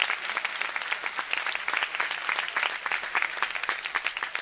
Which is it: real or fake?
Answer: real